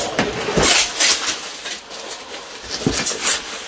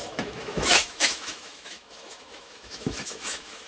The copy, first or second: second